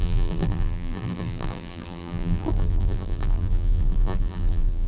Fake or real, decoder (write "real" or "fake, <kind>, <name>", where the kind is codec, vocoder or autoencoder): fake, vocoder, BigVGAN v2